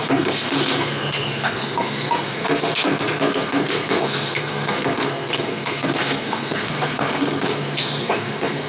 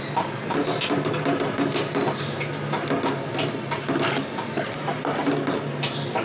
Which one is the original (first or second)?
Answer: second